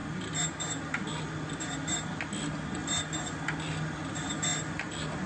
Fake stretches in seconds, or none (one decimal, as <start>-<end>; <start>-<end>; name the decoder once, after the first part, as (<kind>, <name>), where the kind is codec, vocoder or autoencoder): 4.5-5.3 (vocoder, BigVGAN v2)